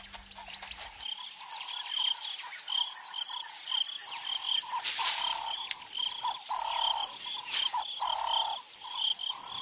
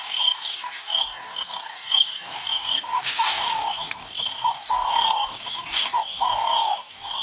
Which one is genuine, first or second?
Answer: first